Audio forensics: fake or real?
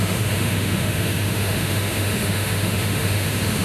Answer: fake